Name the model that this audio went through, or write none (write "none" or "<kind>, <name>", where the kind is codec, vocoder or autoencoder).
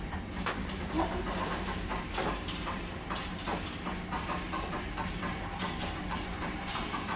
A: vocoder, BigVGAN v2